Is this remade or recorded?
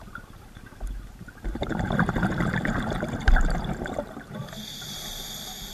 remade